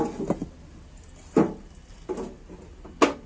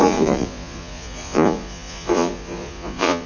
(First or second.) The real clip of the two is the first